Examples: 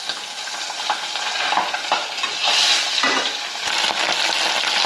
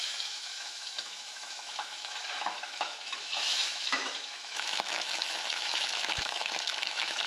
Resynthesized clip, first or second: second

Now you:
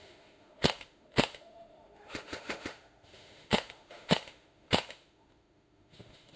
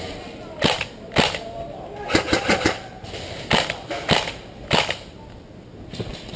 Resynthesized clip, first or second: first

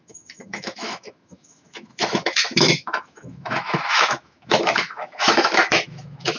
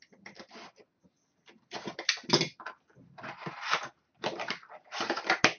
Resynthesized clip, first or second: first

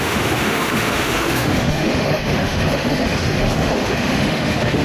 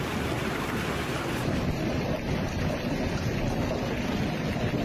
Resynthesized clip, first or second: first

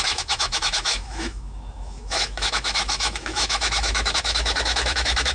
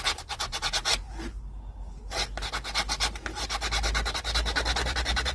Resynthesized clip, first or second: first